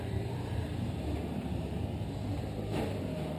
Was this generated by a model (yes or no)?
yes